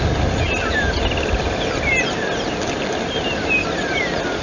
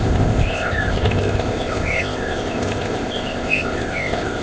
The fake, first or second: second